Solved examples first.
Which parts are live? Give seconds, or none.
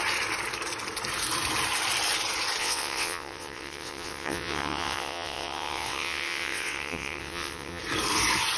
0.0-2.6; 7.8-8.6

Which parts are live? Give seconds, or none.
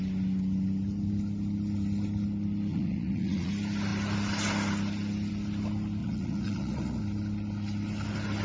0.0-2.7; 3.5-6.0; 7.0-8.4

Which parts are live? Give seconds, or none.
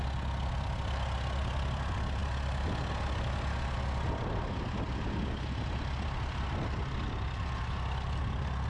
0.0-8.7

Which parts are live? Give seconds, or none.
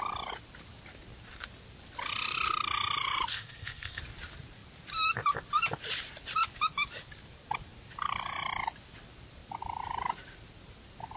0.0-3.3; 4.0-11.2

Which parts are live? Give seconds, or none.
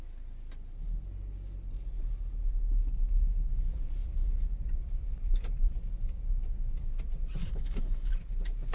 0.0-7.4; 8.1-8.7